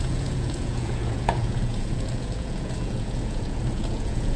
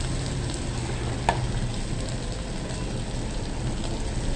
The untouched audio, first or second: second